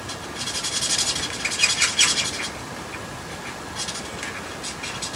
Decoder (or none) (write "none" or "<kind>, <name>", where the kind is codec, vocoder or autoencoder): none